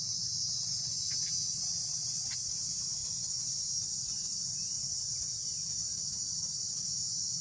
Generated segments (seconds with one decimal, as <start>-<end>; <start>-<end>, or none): none